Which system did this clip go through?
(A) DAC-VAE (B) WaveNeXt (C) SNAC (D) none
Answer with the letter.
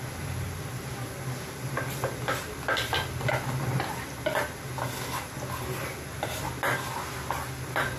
D